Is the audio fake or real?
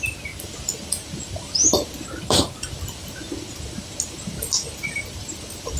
real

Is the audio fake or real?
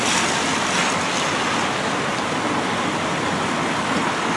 real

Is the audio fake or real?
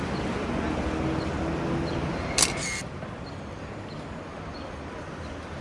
real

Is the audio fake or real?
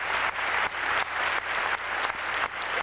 real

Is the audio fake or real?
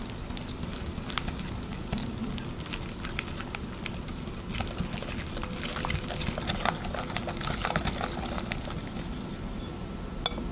real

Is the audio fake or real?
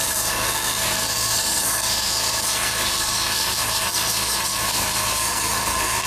fake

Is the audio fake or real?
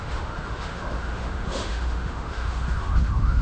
fake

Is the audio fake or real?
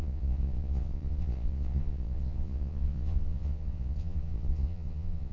fake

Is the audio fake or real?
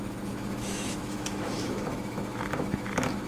fake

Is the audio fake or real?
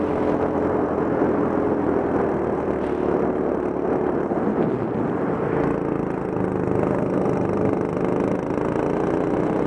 real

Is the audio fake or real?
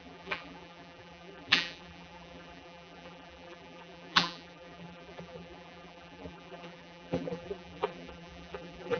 fake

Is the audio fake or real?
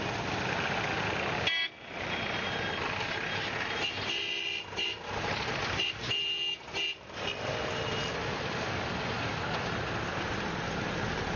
real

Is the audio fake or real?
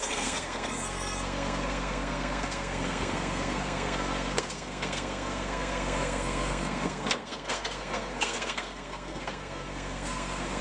fake